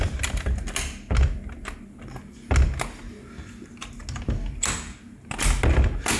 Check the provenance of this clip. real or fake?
real